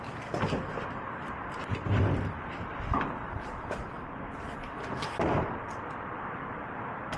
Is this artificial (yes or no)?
yes